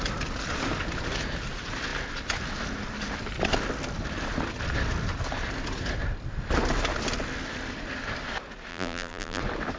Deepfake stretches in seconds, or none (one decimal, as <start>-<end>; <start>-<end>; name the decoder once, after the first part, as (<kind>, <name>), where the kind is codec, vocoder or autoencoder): 8.7-9.4 (vocoder, BigVGAN v2)